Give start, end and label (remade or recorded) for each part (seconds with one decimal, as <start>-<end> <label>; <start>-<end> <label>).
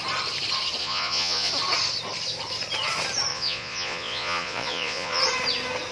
0.0-0.8 recorded; 0.8-1.5 remade; 1.5-3.3 recorded; 3.3-5.2 remade; 5.2-5.9 recorded